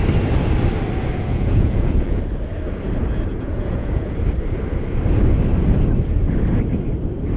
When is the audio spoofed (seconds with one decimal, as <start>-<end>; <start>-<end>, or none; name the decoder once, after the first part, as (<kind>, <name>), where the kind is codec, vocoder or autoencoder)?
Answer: 1.3-2.2 (vocoder, Vocos); 3.3-4.2

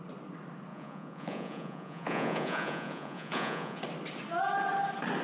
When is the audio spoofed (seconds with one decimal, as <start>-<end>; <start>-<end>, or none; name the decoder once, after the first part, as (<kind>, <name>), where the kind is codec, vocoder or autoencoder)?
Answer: 0.7-3.8 (vocoder, Vocos)

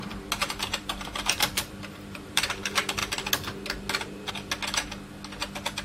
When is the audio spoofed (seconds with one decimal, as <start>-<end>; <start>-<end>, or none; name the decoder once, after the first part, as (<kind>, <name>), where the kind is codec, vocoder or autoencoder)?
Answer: 0.4-2.5 (vocoder, BigVGAN v2)